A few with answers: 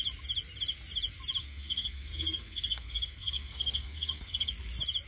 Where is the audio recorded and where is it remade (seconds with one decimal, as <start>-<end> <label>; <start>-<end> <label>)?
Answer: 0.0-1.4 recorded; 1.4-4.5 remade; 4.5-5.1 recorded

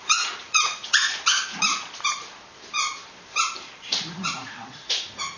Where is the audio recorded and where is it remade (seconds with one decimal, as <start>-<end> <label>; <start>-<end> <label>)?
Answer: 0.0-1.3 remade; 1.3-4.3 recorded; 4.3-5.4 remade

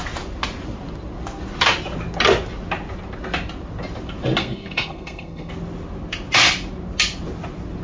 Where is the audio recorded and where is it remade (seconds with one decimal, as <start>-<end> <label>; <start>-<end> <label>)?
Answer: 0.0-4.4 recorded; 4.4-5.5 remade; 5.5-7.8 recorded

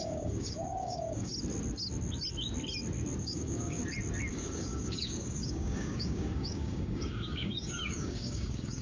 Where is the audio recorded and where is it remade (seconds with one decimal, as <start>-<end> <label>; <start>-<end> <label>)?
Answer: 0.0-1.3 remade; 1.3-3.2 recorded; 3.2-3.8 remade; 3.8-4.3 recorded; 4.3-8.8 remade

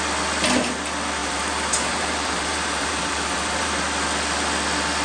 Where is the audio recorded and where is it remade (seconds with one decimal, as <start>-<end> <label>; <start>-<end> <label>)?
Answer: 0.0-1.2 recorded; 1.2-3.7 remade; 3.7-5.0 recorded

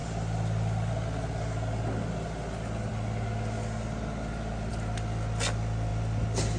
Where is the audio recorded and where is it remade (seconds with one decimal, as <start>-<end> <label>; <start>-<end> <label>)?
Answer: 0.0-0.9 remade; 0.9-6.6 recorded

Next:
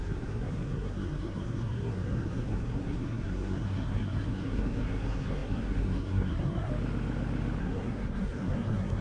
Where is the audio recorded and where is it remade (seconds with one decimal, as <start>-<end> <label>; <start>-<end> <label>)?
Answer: 0.0-6.7 remade; 6.7-7.6 recorded; 7.6-9.0 remade